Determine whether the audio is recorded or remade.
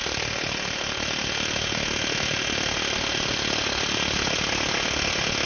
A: recorded